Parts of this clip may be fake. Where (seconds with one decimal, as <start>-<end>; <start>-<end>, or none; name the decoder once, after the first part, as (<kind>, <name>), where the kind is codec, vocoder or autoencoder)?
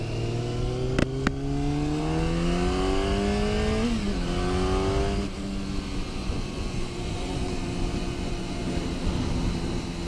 6.2-8.7 (vocoder, Vocos)